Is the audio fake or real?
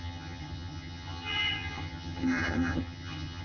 fake